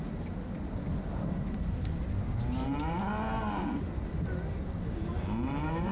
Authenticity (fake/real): real